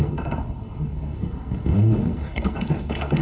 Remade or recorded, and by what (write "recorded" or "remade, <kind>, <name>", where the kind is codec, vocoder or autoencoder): remade, codec, SNAC